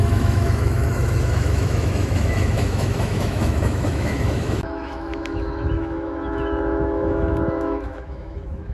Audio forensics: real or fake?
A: fake